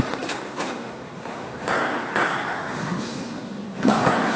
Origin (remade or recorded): remade